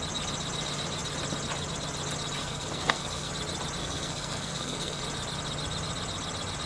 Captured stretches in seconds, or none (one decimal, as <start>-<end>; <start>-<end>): 0.0-2.4; 3.3-3.8; 5.0-6.7